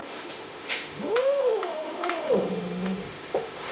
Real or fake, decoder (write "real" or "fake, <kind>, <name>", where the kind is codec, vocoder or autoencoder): fake, autoencoder, DAC-VAE